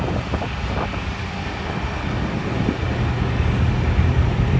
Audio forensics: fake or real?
real